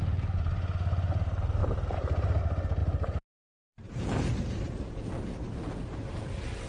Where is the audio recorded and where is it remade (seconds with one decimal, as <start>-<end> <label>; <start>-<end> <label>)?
0.0-1.6 recorded; 1.6-2.4 remade; 2.4-2.8 recorded; 2.8-5.1 remade; 5.1-6.7 recorded